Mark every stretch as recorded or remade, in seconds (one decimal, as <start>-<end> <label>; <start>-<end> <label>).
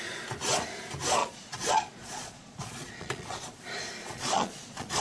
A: 0.0-1.2 recorded; 1.2-3.6 remade; 3.6-4.0 recorded; 4.0-5.0 remade